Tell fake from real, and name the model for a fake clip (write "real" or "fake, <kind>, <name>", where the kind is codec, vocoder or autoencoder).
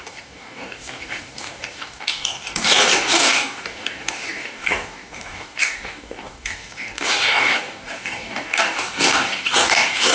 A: fake, codec, DAC